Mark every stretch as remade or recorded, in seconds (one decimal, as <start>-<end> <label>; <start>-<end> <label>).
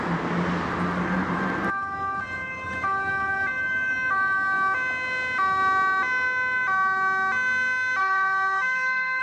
0.0-8.0 recorded; 8.0-9.2 remade